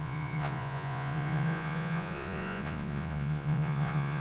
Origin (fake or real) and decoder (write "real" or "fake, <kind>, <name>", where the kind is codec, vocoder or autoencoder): fake, vocoder, Vocos